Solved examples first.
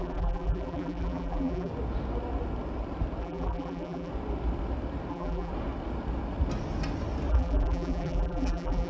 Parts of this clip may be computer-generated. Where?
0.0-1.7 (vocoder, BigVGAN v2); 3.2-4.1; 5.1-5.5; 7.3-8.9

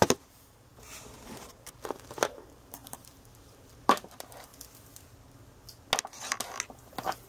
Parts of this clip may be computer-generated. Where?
0.0-0.7 (vocoder, BigVGAN v2); 1.4-4.5